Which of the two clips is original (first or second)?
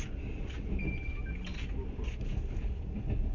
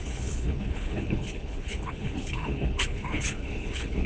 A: first